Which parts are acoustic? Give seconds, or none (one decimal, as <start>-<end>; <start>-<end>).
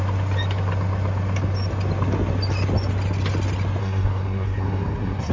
0.0-3.8